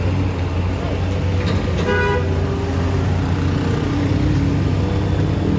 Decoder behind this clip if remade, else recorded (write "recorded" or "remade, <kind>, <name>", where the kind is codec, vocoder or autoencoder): recorded